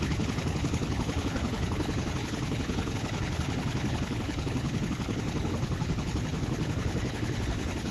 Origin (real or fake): fake